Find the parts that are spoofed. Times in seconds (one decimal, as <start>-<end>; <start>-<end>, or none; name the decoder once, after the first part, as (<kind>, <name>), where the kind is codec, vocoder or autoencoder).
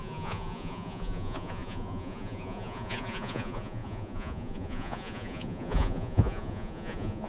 0.0-7.3 (vocoder, Vocos)